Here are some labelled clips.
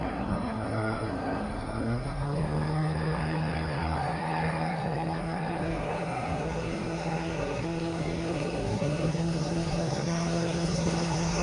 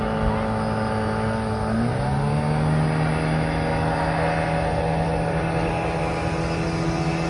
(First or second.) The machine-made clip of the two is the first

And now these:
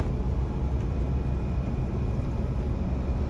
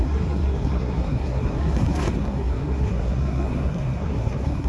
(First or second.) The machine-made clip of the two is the second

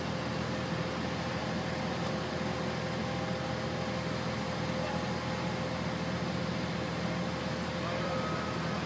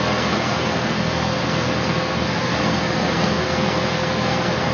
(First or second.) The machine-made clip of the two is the second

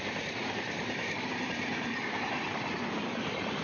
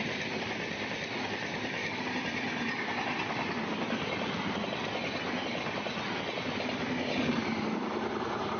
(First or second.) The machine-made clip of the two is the first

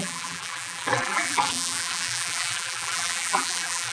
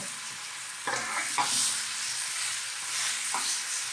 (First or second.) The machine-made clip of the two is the first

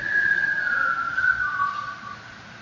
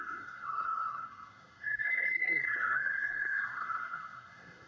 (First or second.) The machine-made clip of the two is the second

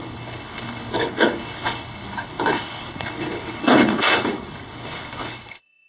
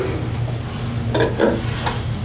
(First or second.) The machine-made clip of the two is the first